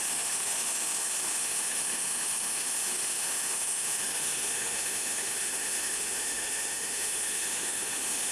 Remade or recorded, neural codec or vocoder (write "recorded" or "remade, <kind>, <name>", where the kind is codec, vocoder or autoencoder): remade, autoencoder, DAC-VAE